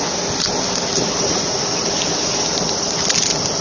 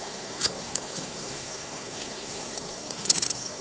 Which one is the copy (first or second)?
second